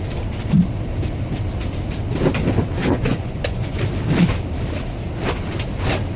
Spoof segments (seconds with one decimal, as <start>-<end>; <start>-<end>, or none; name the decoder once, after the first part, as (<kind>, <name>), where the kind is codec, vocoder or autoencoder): 2.8-3.8 (vocoder, Vocos)